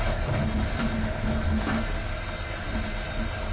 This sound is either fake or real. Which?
real